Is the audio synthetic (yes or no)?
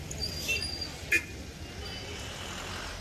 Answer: no